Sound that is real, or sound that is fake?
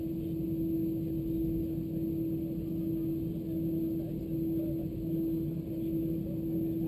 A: real